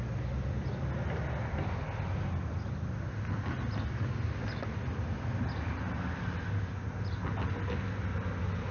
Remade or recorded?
recorded